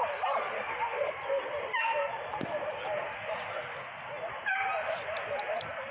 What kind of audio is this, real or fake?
real